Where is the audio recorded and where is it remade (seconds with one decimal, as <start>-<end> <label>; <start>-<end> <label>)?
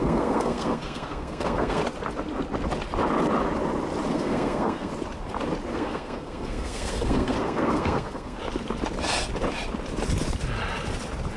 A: 0.0-1.8 remade; 1.8-4.1 recorded; 4.1-4.9 remade; 4.9-5.7 recorded; 5.7-8.4 remade; 8.4-11.4 recorded